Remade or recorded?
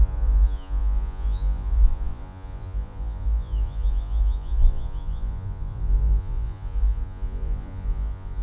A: remade